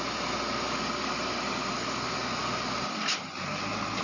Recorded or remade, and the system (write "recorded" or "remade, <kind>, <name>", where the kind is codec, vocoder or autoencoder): recorded